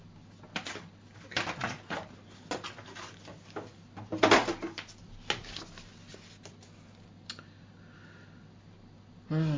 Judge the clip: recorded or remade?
recorded